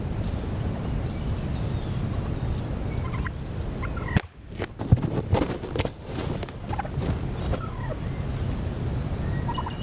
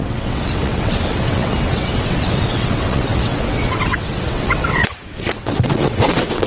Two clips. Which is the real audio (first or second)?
first